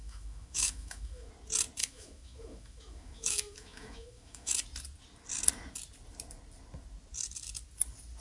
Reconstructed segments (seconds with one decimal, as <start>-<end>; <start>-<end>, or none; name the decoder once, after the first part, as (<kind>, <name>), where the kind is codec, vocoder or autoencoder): 0.0-1.3 (autoencoder, DAC-VAE); 1.8-4.5